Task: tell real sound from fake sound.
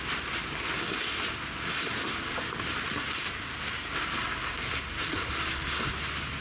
real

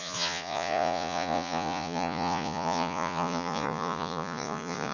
fake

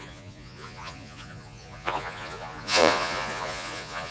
fake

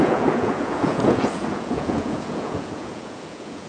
fake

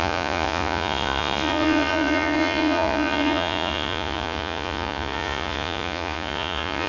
fake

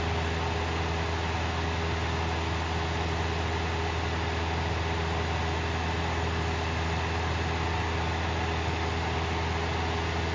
real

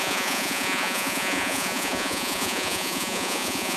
fake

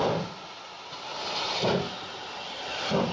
real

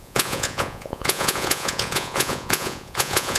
fake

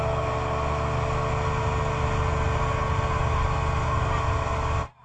real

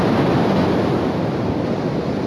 real